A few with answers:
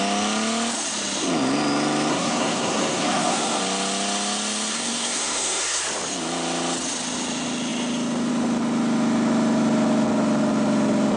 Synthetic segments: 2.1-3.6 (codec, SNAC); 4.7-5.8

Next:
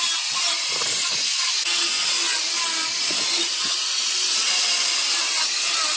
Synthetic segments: none

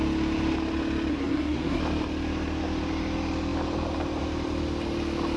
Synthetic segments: 1.1-1.8 (codec, SNAC)